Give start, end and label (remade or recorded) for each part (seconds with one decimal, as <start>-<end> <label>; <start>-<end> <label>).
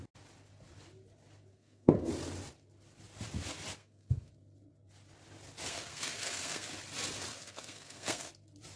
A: 0.0-1.5 recorded; 1.5-2.1 remade; 2.1-3.8 recorded; 3.8-4.3 remade; 4.3-5.7 recorded; 5.7-6.7 remade; 6.7-7.3 recorded; 7.3-8.3 remade; 8.3-8.8 recorded